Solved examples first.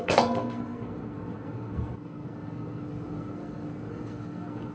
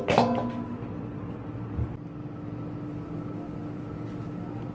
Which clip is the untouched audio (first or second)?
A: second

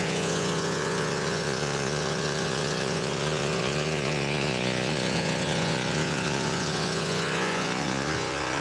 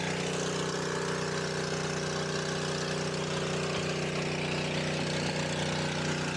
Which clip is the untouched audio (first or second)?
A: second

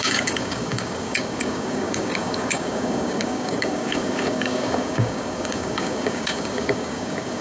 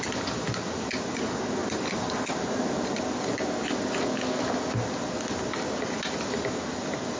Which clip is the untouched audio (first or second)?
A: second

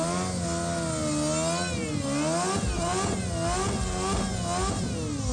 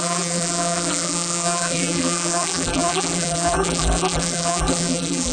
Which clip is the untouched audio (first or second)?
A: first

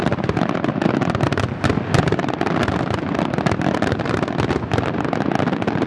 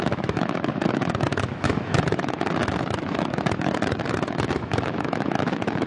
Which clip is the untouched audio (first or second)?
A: first